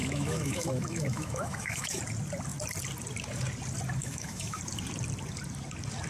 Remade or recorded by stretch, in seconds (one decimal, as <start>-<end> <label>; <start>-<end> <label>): 0.0-2.0 remade; 2.0-4.0 recorded; 4.0-4.6 remade; 4.6-6.1 recorded